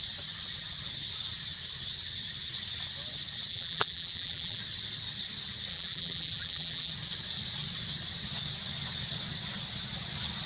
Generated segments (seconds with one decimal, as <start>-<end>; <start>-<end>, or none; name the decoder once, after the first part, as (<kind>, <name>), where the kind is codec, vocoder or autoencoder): 3.5-4.6 (vocoder, BigVGAN v2); 5.7-6.9